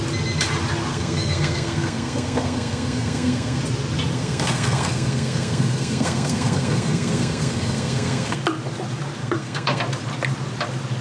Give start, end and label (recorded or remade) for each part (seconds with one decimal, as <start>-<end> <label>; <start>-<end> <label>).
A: 0.0-0.9 recorded; 0.9-3.6 remade; 3.6-4.1 recorded; 4.1-8.4 remade; 8.4-9.2 recorded; 9.2-9.8 remade; 9.8-11.0 recorded